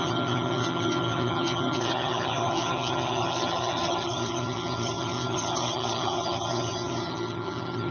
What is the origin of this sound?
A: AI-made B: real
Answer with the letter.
A